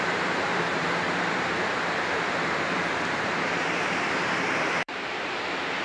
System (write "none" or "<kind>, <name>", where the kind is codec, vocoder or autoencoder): vocoder, BigVGAN v2